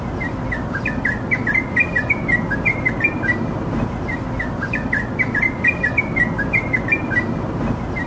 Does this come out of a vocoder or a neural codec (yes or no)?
no